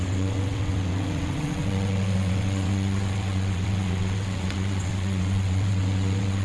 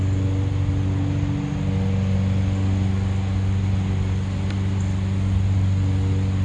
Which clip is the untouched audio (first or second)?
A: second